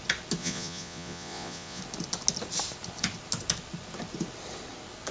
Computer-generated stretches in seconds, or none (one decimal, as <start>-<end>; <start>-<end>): 0.4-1.8